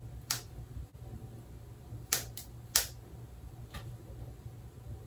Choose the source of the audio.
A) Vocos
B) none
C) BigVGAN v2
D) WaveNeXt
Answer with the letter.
B